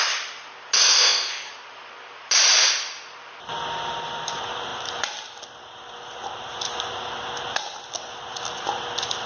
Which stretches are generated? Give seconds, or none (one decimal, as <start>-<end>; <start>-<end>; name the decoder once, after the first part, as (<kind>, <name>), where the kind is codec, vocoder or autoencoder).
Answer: 0.9-1.5 (codec, ZipCodec)